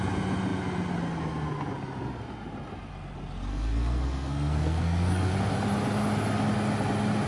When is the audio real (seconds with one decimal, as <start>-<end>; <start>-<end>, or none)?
0.0-3.5; 5.3-7.3